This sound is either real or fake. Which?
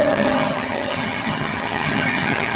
fake